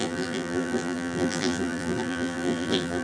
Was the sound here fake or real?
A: fake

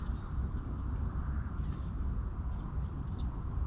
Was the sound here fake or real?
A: real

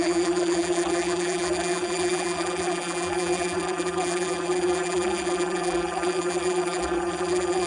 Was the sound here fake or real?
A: fake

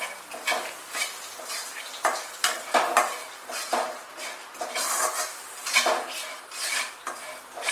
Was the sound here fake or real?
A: fake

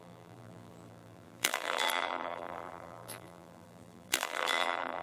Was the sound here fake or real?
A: fake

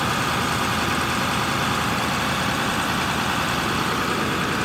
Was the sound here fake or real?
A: real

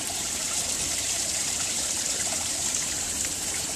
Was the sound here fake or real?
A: fake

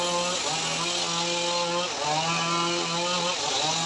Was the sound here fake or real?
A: real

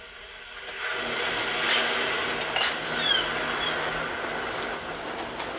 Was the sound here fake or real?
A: real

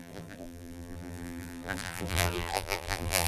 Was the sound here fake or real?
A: fake